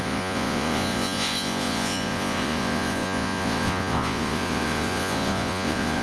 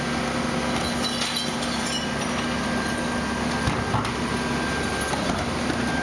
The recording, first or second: second